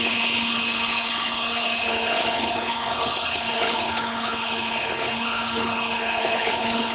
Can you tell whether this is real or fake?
fake